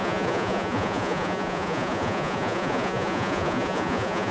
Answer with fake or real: fake